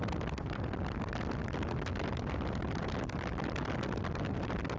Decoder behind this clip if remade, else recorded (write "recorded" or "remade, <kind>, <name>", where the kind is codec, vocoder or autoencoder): recorded